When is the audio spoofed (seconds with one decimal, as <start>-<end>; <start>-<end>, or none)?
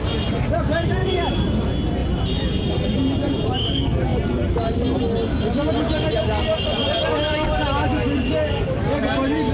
1.0-1.6; 2.0-2.9